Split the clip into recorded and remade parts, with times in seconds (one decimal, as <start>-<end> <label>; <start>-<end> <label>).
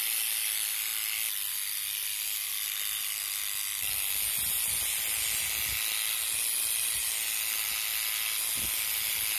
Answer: 0.0-0.9 remade; 0.9-1.5 recorded; 1.5-9.4 remade